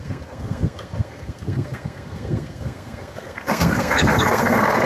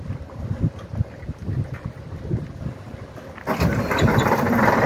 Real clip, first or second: second